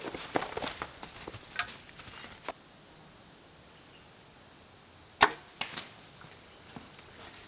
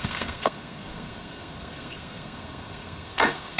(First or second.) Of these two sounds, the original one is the first